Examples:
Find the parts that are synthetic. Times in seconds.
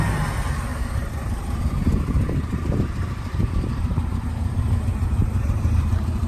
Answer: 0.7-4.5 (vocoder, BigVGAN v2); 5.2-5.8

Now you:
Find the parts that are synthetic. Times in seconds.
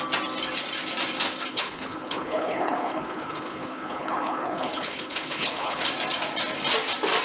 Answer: 1.5-5.8 (codec, HILCodec)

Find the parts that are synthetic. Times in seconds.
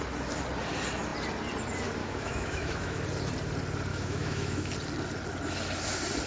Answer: 2.0-3.0 (autoencoder, DAC-VAE); 3.9-4.7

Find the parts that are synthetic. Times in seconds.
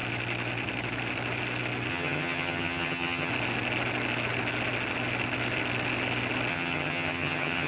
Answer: 1.9-3.3 (vocoder, HiFi-GAN); 6.5-7.7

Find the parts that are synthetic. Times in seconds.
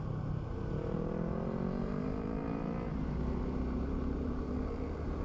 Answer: 1.8-4.5 (vocoder, BigVGAN v2)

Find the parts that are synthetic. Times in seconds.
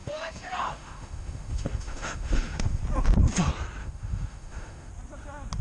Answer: 0.0-2.8 (autoencoder, DAC-VAE); 3.8-4.9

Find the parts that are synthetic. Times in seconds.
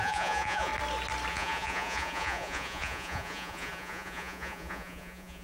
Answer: 0.0-0.7 (vocoder, Vocos); 1.3-5.4